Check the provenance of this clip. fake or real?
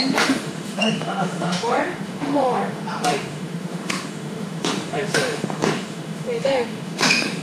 fake